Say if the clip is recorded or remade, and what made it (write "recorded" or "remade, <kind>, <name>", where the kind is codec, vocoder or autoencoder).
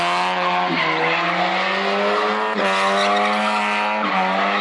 recorded